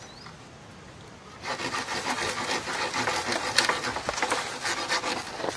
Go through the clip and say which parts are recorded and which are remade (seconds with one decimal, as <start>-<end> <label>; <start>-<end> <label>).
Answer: 0.0-5.6 recorded